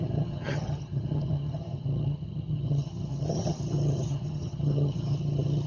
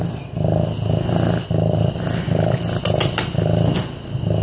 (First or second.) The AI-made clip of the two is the first